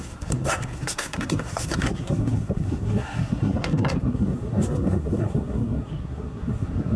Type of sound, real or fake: fake